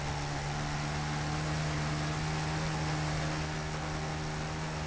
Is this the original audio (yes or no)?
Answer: yes